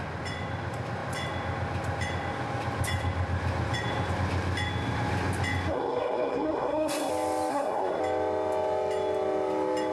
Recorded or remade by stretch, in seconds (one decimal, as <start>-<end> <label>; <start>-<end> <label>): 0.0-5.7 recorded; 5.7-7.1 remade; 7.1-7.5 recorded; 7.5-8.0 remade; 8.0-9.9 recorded